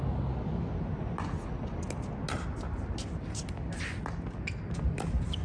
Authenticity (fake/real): real